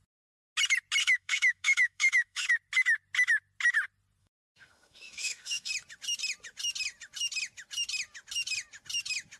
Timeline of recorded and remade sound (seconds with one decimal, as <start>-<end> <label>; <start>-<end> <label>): 0.0-1.0 recorded; 1.0-2.5 remade; 2.5-4.2 recorded; 4.2-5.7 remade; 5.7-9.4 recorded